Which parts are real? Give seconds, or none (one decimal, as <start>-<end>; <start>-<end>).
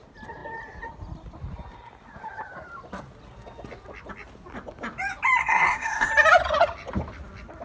0.0-5.4; 6.1-7.6